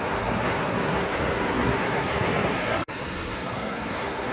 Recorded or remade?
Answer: remade